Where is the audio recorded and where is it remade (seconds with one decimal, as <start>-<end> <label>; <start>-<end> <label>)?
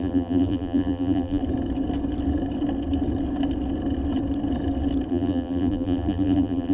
0.0-1.4 remade; 1.4-5.1 recorded; 5.1-6.7 remade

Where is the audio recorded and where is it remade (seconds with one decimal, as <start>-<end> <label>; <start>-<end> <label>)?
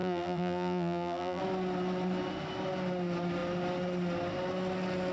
0.0-1.4 remade; 1.4-5.1 recorded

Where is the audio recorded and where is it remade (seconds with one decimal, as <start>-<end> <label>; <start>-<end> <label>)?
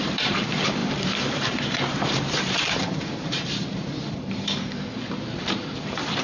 0.0-6.2 remade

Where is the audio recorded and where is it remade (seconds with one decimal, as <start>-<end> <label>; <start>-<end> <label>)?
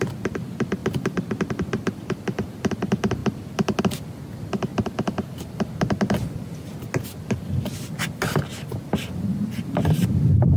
0.0-10.6 recorded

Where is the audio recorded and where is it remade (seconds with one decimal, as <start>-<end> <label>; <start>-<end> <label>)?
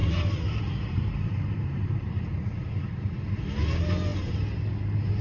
0.0-3.1 remade; 3.1-4.1 recorded; 4.1-4.7 remade; 4.7-5.2 recorded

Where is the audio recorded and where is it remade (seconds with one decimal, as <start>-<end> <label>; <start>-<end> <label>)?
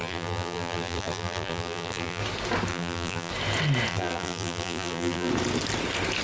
0.0-2.2 remade; 2.2-2.7 recorded; 2.7-3.3 remade; 3.3-3.9 recorded; 3.9-5.3 remade; 5.3-6.2 recorded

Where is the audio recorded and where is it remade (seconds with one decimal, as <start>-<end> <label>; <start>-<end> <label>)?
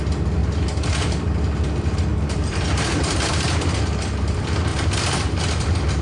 0.0-0.4 recorded; 0.4-0.9 remade; 0.9-2.1 recorded; 2.1-2.6 remade; 2.6-4.7 recorded; 4.7-5.4 remade; 5.4-6.0 recorded